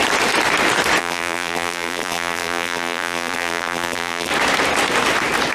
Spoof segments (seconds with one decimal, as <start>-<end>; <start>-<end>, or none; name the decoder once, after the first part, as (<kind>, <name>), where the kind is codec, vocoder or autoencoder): 1.0-4.3 (vocoder, BigVGAN v2)